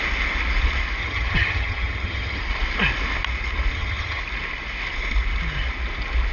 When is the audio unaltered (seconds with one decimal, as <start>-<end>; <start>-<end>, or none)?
0.0-1.0; 2.4-3.7; 4.2-6.3

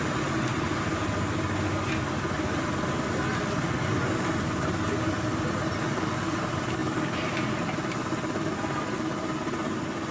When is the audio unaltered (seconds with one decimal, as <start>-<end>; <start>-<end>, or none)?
0.0-10.1

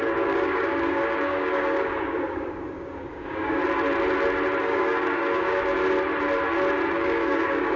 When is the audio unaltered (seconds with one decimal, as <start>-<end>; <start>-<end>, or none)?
3.6-4.6; 5.8-6.9